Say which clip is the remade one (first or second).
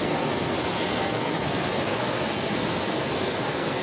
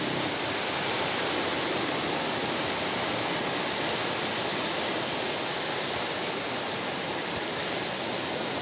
first